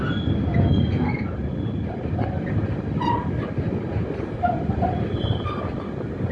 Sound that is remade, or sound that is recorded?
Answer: recorded